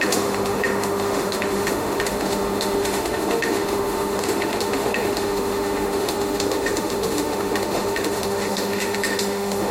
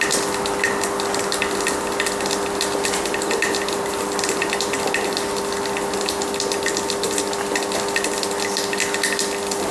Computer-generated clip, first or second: first